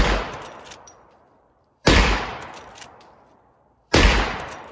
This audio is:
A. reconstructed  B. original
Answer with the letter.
A